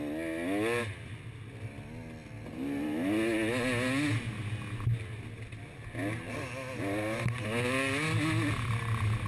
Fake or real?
real